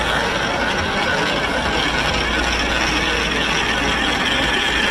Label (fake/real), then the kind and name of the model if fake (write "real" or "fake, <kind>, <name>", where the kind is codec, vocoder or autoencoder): real